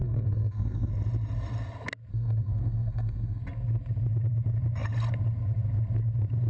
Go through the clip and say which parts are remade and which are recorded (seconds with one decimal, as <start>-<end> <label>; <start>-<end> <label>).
0.0-0.9 remade; 0.9-2.1 recorded; 2.1-3.4 remade; 3.4-6.5 recorded